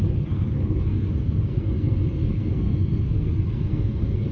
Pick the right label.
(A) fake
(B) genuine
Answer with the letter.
A